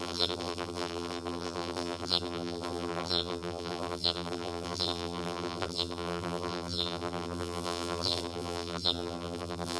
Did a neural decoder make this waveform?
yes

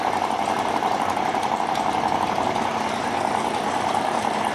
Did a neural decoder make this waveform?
no